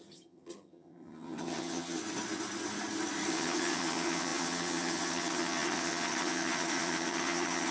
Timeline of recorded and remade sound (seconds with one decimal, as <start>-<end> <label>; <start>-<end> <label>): 0.0-2.0 remade; 2.0-3.3 recorded; 3.3-7.7 remade